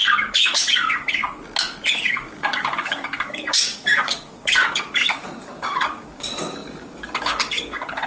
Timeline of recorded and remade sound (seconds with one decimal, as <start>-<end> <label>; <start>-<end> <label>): 0.0-1.2 remade; 1.2-1.9 recorded; 1.9-8.1 remade